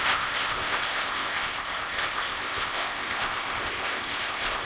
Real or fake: fake